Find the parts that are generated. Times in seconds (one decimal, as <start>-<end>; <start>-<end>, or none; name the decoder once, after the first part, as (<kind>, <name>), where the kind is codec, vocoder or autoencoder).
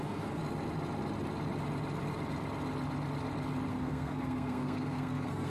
0.0-0.4 (codec, SNAC); 3.7-5.5